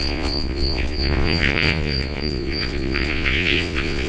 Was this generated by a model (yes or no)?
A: yes